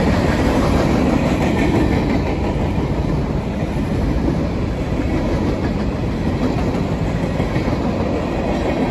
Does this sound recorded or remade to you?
recorded